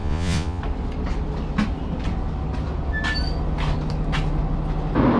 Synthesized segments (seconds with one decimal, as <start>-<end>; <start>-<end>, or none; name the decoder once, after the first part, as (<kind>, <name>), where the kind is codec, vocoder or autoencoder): 0.0-0.6 (vocoder, Vocos)